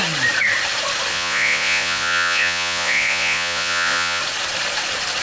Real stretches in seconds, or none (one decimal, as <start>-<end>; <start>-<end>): 0.0-1.1; 4.2-5.2